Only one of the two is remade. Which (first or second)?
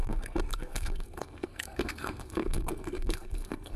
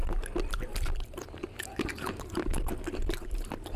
first